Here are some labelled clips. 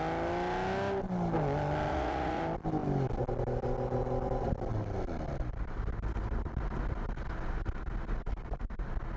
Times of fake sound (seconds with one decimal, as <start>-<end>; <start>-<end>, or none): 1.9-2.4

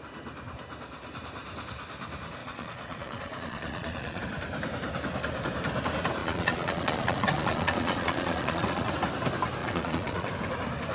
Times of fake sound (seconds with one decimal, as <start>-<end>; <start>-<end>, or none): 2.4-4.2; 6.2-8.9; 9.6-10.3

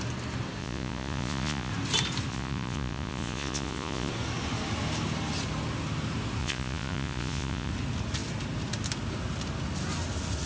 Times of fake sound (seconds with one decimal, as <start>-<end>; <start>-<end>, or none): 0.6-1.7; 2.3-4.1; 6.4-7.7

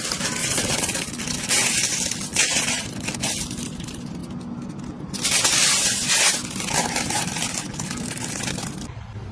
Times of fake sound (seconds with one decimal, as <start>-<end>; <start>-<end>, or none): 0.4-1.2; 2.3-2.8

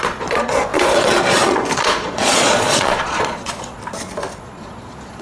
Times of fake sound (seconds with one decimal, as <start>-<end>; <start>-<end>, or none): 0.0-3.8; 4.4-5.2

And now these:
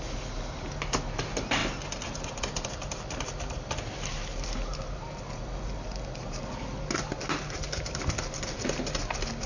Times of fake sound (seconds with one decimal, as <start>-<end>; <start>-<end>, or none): none

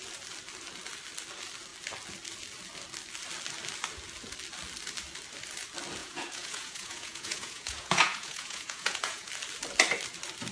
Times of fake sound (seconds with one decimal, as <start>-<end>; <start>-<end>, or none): 6.0-9.3

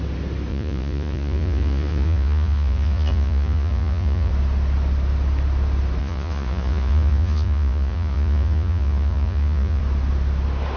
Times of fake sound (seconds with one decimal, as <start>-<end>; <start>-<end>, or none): 0.5-4.3; 6.0-9.8